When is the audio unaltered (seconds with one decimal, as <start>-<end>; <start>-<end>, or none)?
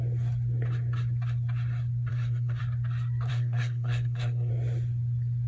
0.0-2.1; 2.6-3.3; 4.5-5.5